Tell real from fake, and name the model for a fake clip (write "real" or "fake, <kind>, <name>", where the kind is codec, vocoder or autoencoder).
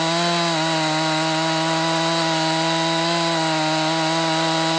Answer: real